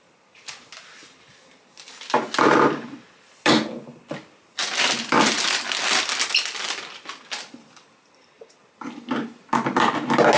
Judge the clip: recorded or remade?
recorded